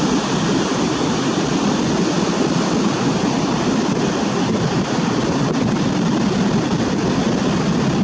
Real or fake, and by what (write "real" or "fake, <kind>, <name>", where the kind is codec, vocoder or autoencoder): real